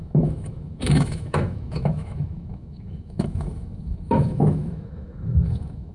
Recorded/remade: remade